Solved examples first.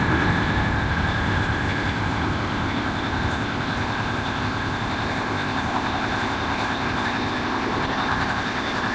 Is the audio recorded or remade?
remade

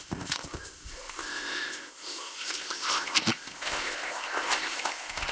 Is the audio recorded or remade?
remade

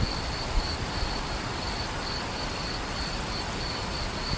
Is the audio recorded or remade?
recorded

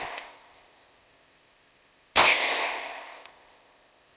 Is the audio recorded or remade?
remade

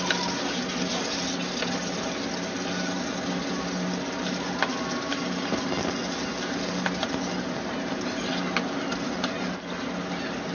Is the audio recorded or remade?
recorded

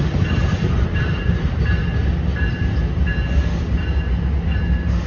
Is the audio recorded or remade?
recorded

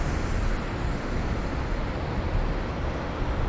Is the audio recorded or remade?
recorded